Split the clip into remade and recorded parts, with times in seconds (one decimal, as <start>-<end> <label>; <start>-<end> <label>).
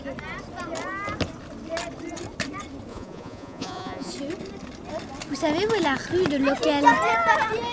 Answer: 0.0-2.9 recorded; 2.9-4.1 remade; 4.1-7.7 recorded